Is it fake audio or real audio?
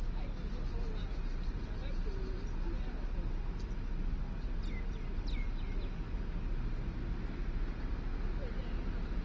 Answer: real